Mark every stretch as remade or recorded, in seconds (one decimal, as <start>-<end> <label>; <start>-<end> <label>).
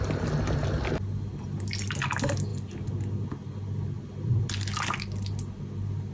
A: 0.0-6.1 recorded